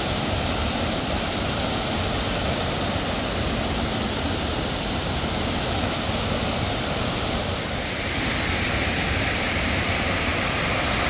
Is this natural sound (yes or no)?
yes